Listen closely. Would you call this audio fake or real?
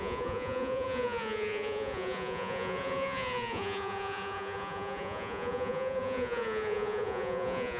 fake